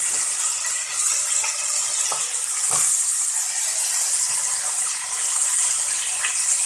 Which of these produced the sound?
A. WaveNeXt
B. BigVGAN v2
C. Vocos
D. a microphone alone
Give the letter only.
D